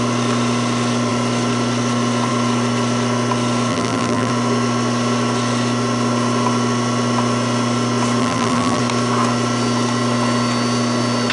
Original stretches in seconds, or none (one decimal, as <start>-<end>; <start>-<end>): 0.0-3.7; 4.3-8.2; 8.8-11.3

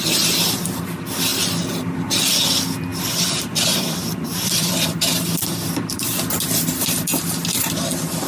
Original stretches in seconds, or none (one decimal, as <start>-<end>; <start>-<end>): 0.0-1.3; 2.3-2.9; 7.6-8.3

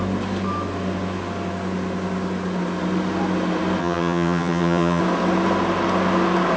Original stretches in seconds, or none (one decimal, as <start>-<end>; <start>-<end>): 0.0-3.8; 5.0-6.6

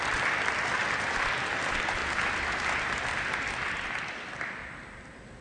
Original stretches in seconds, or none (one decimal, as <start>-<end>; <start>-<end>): 2.0-3.9; 4.6-5.4

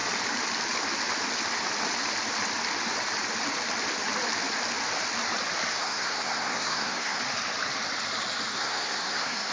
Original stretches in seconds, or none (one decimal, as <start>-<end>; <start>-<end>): 0.0-5.7; 7.2-8.5

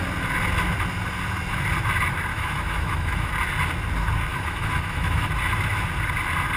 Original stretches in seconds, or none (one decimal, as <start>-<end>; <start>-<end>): 0.0-2.3; 3.3-4.3; 5.3-6.6

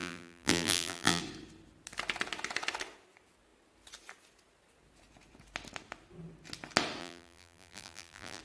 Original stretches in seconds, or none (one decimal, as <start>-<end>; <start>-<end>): 1.2-7.0

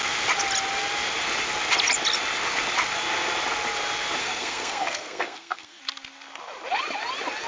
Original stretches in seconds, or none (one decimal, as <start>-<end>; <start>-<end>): 0.0-4.2; 5.8-7.5